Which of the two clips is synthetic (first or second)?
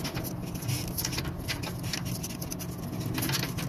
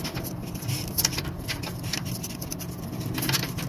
second